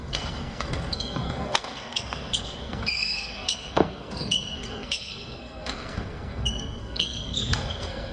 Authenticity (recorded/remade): remade